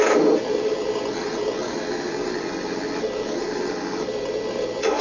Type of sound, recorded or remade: recorded